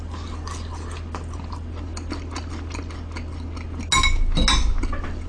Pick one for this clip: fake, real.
real